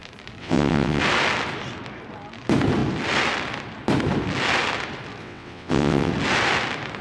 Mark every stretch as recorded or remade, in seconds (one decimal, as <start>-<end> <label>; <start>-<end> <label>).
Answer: 0.0-0.4 recorded; 0.4-1.0 remade; 1.0-5.2 recorded; 5.2-6.1 remade; 6.1-7.0 recorded